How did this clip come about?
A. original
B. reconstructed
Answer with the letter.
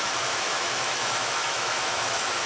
B